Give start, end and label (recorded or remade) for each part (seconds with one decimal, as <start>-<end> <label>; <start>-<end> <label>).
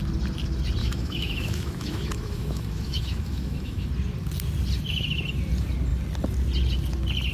0.0-0.8 recorded; 0.8-3.9 remade; 3.9-7.3 recorded